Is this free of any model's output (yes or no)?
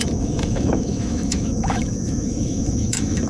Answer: no